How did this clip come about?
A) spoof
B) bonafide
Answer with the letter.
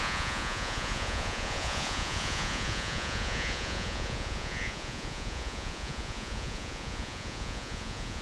A